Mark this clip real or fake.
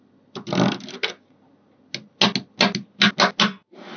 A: real